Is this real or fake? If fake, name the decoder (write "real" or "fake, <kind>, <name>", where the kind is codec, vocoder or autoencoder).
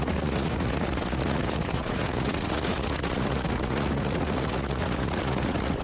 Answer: fake, vocoder, Vocos